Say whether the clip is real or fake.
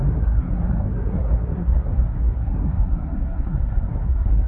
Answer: fake